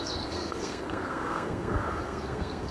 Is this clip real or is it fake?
fake